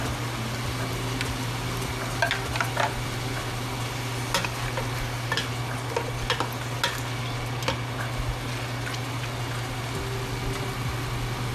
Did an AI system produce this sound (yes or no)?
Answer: no